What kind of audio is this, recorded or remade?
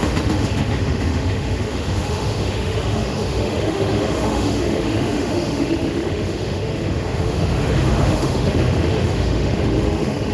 remade